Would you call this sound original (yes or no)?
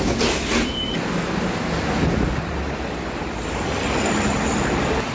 yes